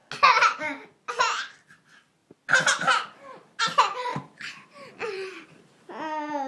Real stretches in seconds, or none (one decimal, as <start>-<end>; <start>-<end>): 0.0-4.1; 5.8-6.5